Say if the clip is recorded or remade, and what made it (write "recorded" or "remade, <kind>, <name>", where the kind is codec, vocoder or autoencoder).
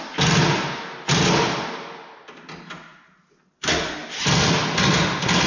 recorded